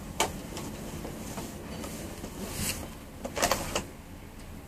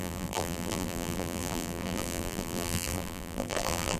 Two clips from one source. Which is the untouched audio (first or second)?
first